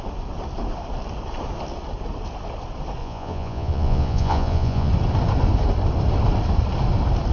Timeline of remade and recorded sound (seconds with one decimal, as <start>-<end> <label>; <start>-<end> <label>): 0.0-3.0 recorded; 3.0-4.9 remade; 4.9-7.3 recorded